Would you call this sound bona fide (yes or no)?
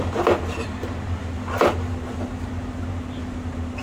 yes